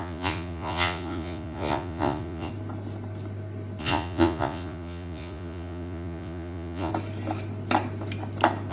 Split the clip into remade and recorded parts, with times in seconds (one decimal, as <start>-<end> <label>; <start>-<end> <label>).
0.0-2.5 remade; 2.5-3.8 recorded; 3.8-6.9 remade; 6.9-8.7 recorded